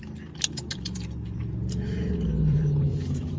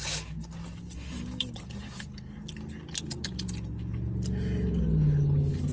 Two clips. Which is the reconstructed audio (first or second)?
first